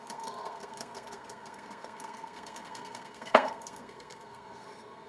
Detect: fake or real fake